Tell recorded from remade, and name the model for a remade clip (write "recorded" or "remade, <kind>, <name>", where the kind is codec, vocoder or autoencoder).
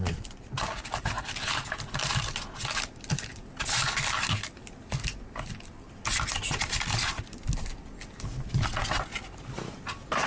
recorded